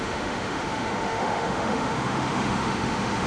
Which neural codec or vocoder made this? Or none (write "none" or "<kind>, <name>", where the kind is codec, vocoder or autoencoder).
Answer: autoencoder, DAC-VAE